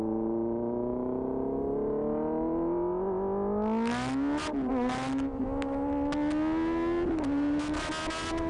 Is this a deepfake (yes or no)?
no